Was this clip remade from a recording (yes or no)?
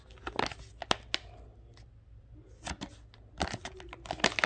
no